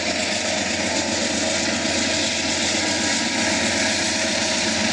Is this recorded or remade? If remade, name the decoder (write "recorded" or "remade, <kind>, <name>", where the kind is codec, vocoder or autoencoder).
recorded